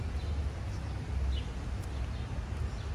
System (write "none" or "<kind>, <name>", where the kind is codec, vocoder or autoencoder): none